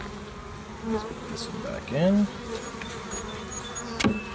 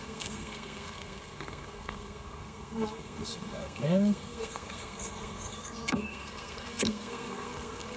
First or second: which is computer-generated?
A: second